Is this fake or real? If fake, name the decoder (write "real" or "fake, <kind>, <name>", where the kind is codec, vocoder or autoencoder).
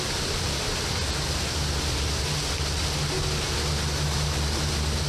real